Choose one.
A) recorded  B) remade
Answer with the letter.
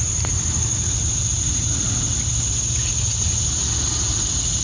A